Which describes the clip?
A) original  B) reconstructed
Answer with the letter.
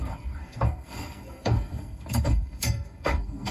B